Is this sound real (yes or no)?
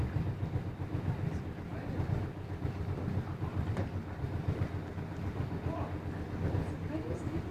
yes